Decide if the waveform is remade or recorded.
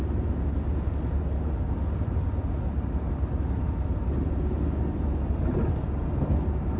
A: recorded